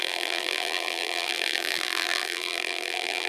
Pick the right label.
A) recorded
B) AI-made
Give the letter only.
B